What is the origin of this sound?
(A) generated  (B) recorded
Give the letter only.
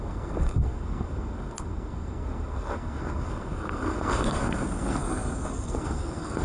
A